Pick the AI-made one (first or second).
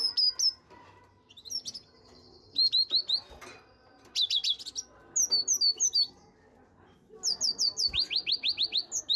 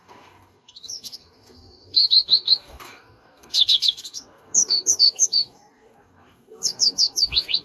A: second